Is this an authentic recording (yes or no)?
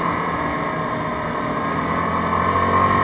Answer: yes